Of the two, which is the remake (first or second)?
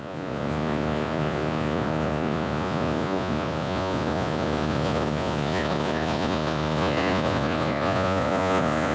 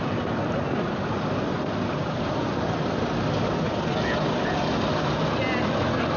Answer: first